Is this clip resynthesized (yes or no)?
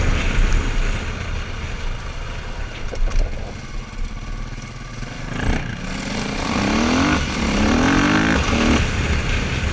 no